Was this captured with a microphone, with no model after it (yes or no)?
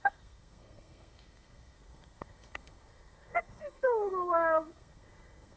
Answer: no